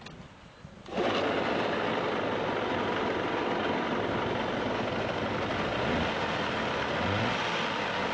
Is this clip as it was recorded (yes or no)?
yes